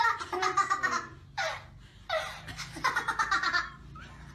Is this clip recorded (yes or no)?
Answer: yes